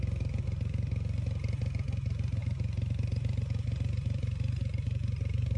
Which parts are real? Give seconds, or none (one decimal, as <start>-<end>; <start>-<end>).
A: 0.0-5.6